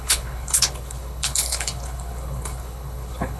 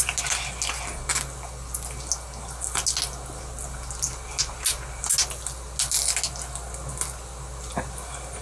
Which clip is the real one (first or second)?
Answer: second